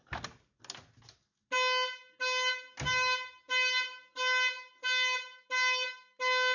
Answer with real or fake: real